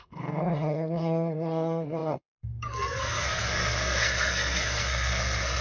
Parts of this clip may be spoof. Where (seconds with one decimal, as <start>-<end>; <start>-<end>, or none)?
0.0-5.6